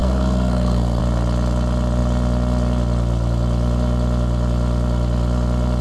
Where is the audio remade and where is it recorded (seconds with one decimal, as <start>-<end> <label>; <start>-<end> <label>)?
0.0-1.0 remade; 1.0-5.8 recorded